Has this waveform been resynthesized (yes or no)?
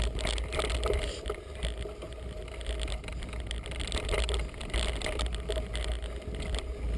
no